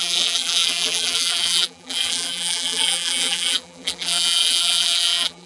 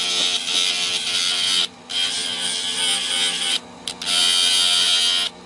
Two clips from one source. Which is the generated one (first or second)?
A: first